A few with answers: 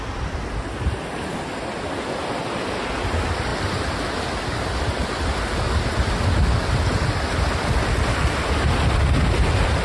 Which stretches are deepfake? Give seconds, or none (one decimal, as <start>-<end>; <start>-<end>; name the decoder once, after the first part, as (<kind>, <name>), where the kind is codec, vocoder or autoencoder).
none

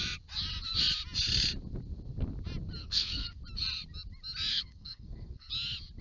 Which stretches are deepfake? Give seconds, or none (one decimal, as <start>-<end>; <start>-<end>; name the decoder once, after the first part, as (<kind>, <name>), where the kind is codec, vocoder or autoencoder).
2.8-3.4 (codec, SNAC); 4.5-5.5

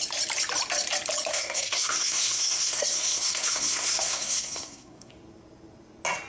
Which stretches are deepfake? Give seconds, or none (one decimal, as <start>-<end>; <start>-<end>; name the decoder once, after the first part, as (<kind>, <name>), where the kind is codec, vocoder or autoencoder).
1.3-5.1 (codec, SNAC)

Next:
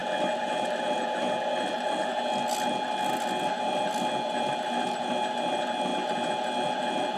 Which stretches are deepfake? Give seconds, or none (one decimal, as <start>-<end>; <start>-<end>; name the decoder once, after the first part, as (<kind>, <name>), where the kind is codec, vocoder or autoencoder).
none

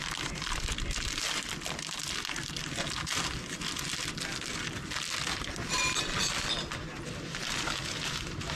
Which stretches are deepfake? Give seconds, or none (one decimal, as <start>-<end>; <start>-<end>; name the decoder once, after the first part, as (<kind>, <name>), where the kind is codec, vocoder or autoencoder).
none

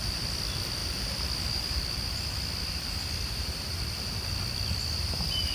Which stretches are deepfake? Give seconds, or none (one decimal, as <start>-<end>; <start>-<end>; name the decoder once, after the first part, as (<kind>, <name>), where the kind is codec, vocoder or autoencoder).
none